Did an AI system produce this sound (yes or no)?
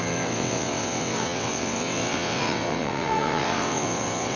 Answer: yes